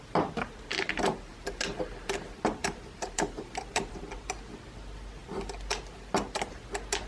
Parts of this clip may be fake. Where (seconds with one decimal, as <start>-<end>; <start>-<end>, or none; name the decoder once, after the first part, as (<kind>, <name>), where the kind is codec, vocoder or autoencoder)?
2.6-4.0 (vocoder, BigVGAN v2)